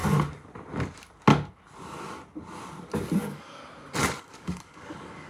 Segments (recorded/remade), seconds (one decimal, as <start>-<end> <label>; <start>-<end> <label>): 0.0-3.2 recorded; 3.2-3.6 remade; 3.6-4.2 recorded; 4.2-5.3 remade